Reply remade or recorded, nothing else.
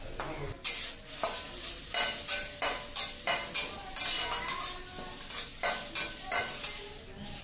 recorded